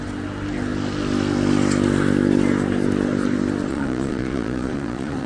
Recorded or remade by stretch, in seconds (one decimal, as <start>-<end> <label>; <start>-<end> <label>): 0.0-3.7 recorded; 3.7-5.3 remade